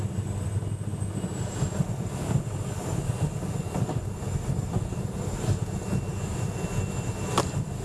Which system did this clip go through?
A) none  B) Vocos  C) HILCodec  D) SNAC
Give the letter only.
A